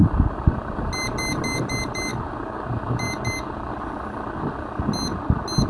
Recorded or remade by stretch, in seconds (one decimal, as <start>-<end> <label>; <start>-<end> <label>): 0.0-5.7 recorded